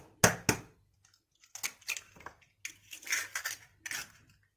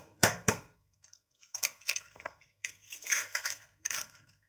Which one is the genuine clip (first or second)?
first